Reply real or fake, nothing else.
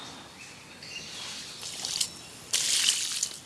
real